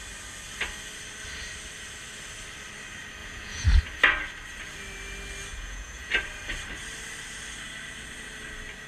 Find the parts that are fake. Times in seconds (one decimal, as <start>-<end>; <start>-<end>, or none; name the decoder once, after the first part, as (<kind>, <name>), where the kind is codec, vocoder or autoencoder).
3.2-3.8 (vocoder, Vocos); 5.5-6.1